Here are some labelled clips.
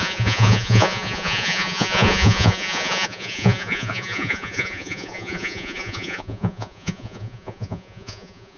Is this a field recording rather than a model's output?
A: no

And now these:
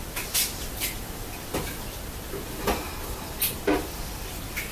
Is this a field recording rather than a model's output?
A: yes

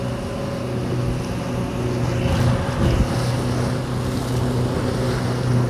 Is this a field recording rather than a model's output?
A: yes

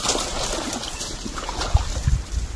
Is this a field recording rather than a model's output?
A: yes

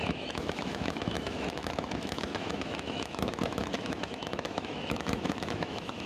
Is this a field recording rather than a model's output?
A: no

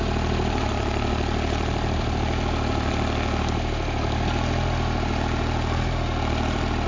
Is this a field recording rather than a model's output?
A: yes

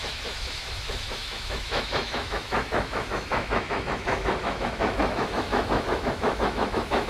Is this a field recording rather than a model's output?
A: no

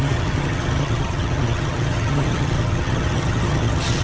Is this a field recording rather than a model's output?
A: no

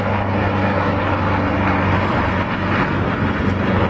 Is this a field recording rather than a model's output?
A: yes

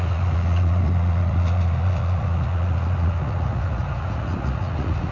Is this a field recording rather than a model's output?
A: no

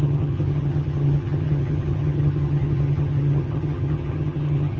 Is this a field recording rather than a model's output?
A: no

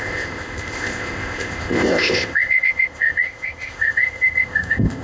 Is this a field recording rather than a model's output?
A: no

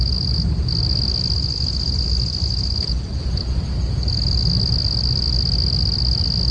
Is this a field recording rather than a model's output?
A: yes